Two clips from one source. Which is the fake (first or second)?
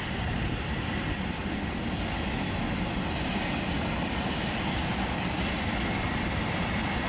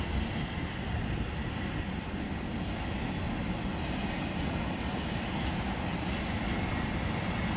first